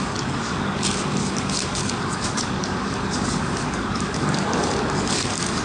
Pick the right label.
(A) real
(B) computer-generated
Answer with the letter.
B